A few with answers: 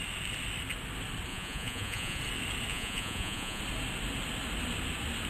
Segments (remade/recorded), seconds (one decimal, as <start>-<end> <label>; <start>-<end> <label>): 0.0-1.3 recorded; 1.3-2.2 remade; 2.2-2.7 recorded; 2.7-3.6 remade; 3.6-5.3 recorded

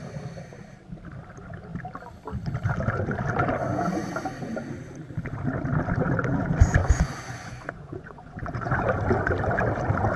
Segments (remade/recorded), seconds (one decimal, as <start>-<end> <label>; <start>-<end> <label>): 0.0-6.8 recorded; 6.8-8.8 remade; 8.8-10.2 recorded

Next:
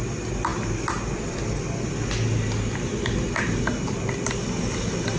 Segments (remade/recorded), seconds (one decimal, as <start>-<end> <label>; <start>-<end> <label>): 0.0-5.2 recorded